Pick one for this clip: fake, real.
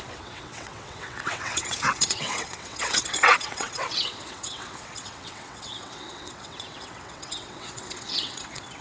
fake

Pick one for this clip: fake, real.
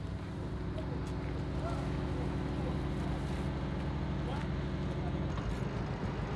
real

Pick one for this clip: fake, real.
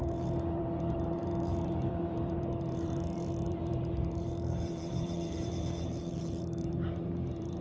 fake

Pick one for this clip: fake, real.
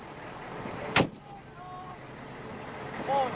real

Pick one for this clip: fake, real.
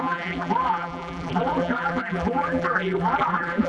fake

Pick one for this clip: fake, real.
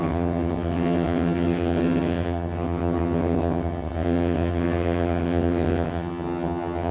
fake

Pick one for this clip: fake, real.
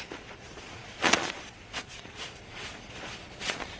fake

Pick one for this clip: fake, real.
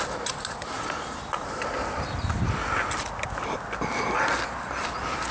real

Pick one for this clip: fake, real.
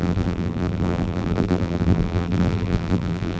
fake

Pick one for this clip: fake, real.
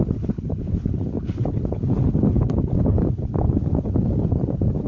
fake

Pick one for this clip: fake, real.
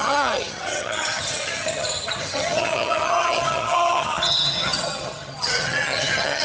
fake